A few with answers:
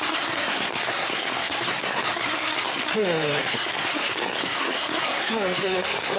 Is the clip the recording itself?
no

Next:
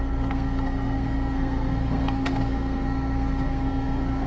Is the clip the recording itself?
no